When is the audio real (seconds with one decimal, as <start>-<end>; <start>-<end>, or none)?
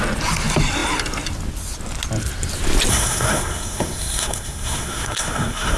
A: 0.0-2.9